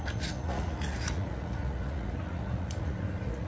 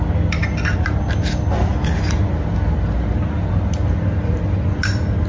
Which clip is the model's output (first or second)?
first